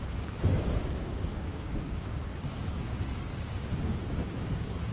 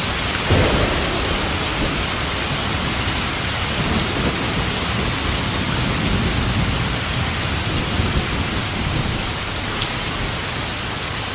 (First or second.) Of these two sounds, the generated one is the first